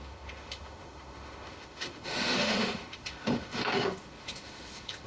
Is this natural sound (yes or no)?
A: no